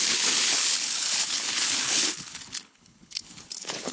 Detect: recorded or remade remade